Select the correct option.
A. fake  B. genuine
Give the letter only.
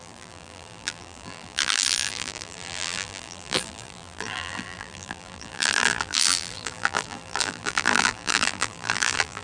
A